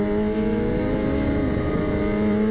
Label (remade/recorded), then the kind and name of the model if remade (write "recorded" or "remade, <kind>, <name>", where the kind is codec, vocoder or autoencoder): recorded